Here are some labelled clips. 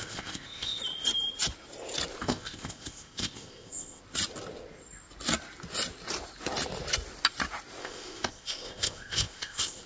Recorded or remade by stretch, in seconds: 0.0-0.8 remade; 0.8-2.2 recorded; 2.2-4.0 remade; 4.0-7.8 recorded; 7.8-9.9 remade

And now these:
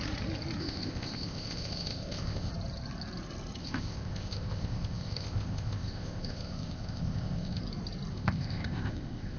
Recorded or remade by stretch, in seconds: 0.0-0.6 recorded; 0.6-2.5 remade; 2.5-3.6 recorded; 3.6-7.6 remade; 7.6-8.1 recorded; 8.1-9.4 remade

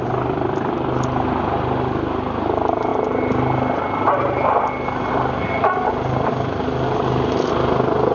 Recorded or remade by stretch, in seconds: 0.0-8.1 recorded